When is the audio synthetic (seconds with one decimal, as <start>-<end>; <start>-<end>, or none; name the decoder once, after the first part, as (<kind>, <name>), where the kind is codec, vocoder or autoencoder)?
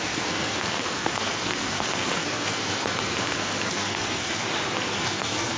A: 0.0-4.4 (codec, SNAC); 5.0-5.6